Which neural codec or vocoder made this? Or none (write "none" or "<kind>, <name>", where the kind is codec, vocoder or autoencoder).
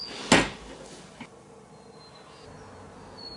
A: none